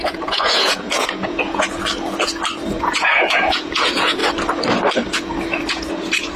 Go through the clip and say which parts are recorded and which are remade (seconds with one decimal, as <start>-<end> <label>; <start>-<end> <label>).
0.0-1.8 remade; 1.8-2.7 recorded; 2.7-4.2 remade; 4.2-5.7 recorded; 5.7-6.4 remade